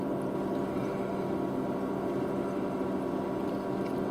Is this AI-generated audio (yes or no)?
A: no